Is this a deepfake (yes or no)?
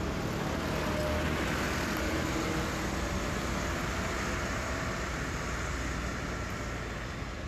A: no